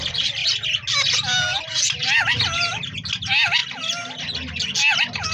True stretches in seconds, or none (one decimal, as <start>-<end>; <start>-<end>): 0.0-5.3